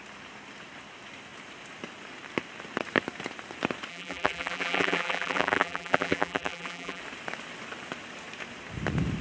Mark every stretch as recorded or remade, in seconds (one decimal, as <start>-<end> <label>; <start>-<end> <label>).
0.0-3.9 recorded; 3.9-7.0 remade; 7.0-9.2 recorded